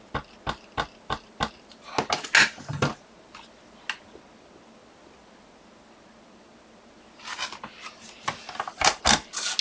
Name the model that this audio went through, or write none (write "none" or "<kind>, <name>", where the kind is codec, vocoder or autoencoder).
none